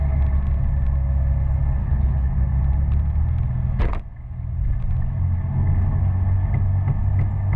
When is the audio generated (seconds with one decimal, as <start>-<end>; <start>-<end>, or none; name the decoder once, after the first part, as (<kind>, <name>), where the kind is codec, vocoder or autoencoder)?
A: 1.8-2.3 (codec, HILCodec)